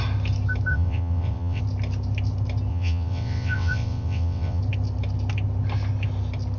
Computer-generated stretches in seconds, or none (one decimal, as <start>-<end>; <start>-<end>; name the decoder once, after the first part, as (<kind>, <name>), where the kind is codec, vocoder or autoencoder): 0.7-1.6 (vocoder, WaveNeXt); 2.7-4.6